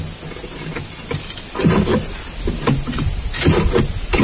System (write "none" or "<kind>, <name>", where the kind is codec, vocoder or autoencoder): none